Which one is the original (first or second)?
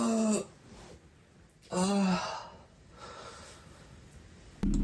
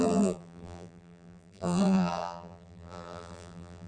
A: first